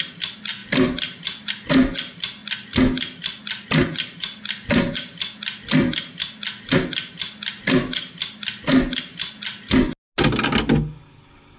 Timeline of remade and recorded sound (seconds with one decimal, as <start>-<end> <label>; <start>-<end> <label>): 0.0-11.6 recorded